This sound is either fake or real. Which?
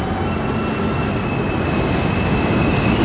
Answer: real